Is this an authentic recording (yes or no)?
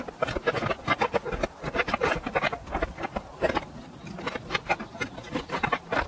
yes